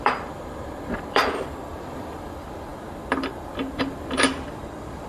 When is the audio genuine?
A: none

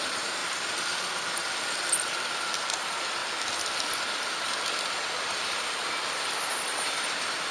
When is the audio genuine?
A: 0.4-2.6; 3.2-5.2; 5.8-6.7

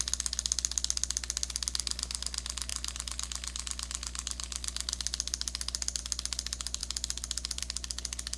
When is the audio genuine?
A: 0.0-8.4

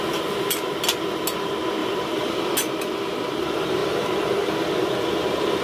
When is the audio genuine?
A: 0.0-1.8; 2.4-5.6

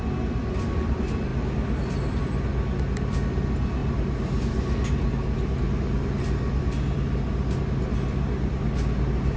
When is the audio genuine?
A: 0.0-3.8; 5.5-9.4